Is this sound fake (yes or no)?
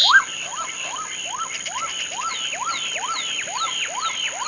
no